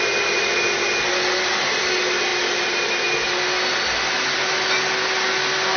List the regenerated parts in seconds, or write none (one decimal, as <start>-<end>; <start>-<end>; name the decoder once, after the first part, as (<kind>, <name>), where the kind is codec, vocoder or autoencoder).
none